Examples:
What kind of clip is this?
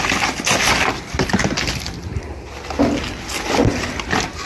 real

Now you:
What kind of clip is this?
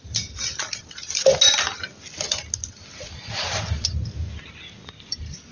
real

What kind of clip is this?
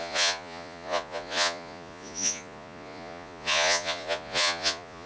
fake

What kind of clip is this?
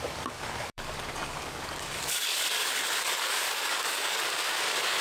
fake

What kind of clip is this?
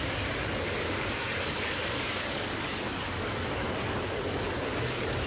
fake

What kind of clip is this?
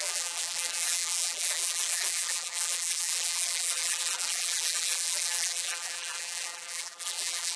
fake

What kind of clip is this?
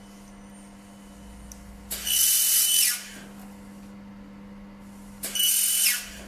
real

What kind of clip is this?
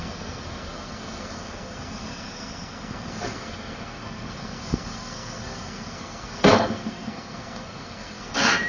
fake